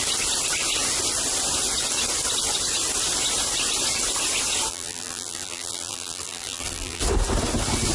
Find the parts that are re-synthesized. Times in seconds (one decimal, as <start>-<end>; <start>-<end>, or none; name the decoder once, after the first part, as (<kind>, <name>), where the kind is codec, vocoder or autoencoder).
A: 4.7-7.0 (vocoder, BigVGAN v2)